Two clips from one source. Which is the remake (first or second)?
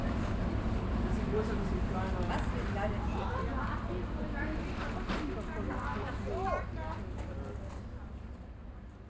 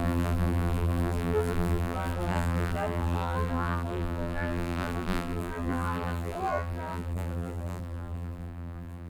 second